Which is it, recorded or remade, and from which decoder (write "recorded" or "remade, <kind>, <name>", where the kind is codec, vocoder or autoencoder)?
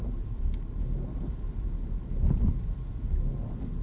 remade, vocoder, BigVGAN v2